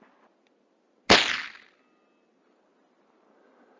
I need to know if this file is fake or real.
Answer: real